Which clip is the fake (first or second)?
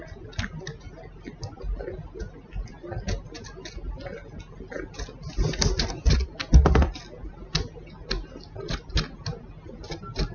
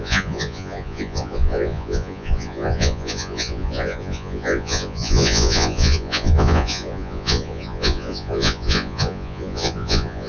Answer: second